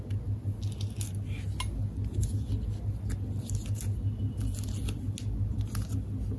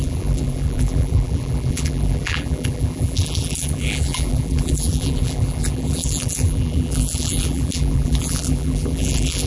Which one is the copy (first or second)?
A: second